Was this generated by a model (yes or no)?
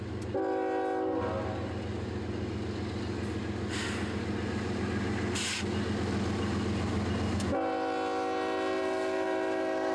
no